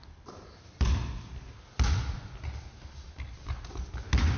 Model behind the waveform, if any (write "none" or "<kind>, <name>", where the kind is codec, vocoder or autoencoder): none